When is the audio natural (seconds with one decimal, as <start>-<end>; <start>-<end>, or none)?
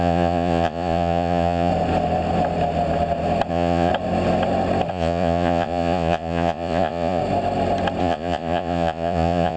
1.7-3.5; 3.9-4.9; 7.2-8.0